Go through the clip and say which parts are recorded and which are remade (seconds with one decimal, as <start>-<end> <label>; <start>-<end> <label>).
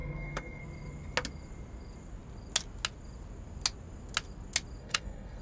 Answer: 0.0-0.6 remade; 0.6-4.8 recorded; 4.8-5.4 remade